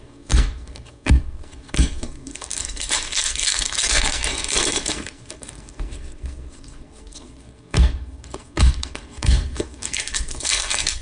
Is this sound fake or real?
fake